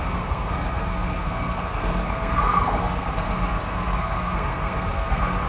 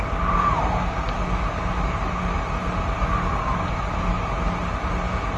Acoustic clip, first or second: second